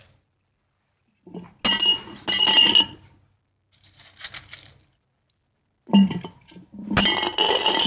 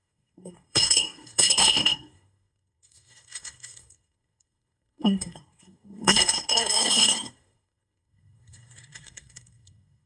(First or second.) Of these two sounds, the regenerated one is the second